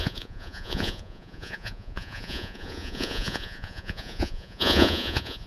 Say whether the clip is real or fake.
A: fake